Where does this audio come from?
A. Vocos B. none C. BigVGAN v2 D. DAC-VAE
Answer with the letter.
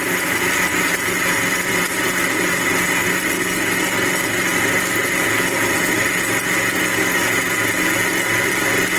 B